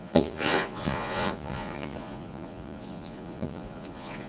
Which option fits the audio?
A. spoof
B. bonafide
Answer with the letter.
A